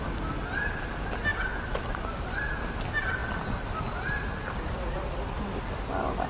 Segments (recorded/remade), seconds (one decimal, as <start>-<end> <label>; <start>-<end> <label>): 0.0-1.3 recorded; 1.3-2.8 remade; 2.8-4.2 recorded; 4.2-5.6 remade; 5.6-6.3 recorded